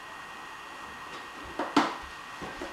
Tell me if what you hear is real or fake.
real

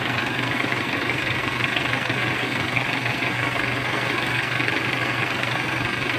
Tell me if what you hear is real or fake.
fake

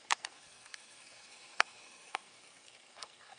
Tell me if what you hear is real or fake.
fake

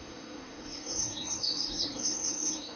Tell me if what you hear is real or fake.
fake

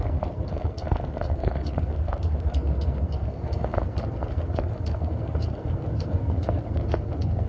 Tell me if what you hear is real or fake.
fake